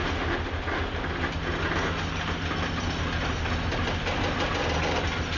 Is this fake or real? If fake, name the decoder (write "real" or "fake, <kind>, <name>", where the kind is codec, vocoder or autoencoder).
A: real